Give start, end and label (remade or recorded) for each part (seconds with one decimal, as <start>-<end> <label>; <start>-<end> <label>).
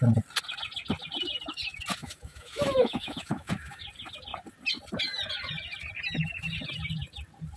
0.0-2.0 recorded; 2.0-3.8 remade; 3.8-7.6 recorded